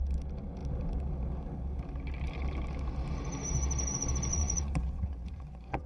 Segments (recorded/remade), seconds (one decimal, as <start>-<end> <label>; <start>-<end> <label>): 0.0-4.3 recorded; 4.3-5.9 remade